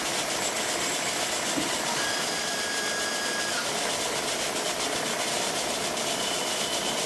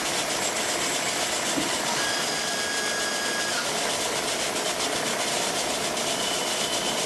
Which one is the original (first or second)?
second